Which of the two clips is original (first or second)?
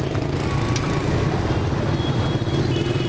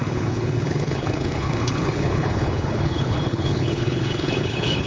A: first